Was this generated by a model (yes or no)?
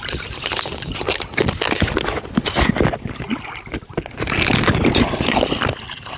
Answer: no